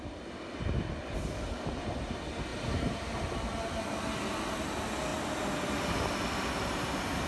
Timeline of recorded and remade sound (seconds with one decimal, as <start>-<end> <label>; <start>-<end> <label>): 0.0-2.5 recorded; 2.5-3.4 remade; 3.4-7.3 recorded